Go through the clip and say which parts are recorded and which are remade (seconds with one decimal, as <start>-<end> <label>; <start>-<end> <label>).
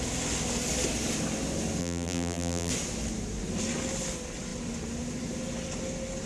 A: 0.0-1.8 recorded; 1.8-2.7 remade; 2.7-6.3 recorded